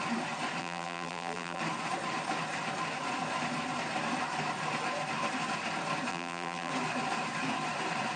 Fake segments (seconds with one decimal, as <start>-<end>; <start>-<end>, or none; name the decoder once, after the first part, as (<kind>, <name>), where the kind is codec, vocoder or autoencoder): 0.6-1.6 (vocoder, BigVGAN v2); 6.1-6.7